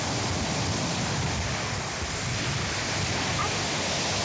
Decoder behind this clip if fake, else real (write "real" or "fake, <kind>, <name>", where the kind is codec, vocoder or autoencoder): real